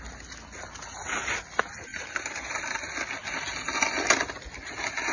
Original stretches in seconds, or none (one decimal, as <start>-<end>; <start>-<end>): 0.0-1.9; 2.6-5.1